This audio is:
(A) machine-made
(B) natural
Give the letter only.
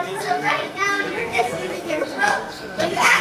A